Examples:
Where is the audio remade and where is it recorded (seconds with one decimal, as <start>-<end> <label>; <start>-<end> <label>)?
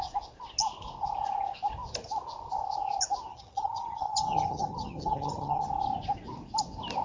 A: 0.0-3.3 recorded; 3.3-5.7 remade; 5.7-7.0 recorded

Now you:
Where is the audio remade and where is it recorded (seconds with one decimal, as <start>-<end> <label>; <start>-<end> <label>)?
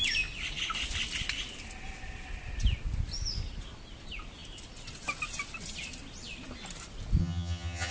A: 0.0-7.2 recorded; 7.2-7.9 remade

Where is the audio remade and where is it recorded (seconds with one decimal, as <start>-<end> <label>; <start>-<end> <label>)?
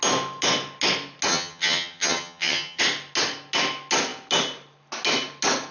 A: 0.0-1.3 recorded; 1.3-2.8 remade; 2.8-5.7 recorded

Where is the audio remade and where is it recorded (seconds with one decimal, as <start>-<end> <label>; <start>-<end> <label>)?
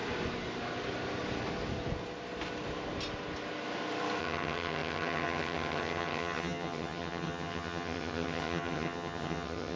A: 0.0-4.2 recorded; 4.2-9.8 remade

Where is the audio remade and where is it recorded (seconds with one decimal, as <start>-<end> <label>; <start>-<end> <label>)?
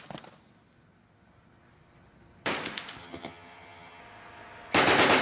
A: 0.0-3.0 recorded; 3.0-4.0 remade; 4.0-5.2 recorded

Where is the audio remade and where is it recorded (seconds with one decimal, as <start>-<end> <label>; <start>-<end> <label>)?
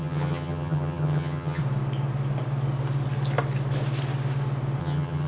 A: 0.0-1.6 remade; 1.6-4.8 recorded; 4.8-5.3 remade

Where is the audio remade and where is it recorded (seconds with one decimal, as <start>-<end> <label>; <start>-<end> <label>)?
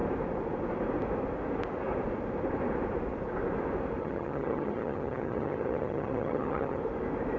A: 0.0-4.0 recorded; 4.0-6.8 remade; 6.8-7.4 recorded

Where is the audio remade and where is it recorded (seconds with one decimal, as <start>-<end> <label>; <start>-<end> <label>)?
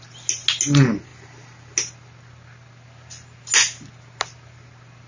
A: 0.0-5.1 recorded